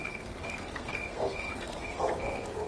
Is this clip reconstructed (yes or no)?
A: yes